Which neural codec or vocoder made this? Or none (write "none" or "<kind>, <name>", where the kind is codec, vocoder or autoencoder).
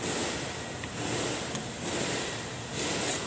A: none